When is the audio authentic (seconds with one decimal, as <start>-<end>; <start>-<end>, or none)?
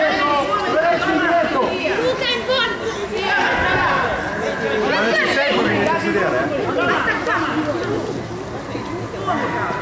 0.0-0.7; 1.8-9.8